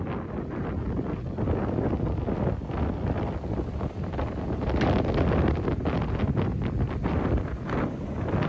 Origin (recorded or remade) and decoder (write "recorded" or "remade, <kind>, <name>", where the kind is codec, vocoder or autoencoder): recorded